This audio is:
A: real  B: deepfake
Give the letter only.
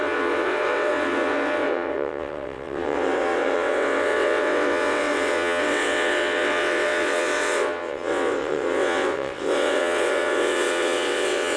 B